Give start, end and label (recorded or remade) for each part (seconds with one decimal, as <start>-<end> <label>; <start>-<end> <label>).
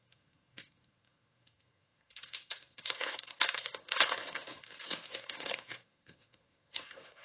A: 0.0-7.2 remade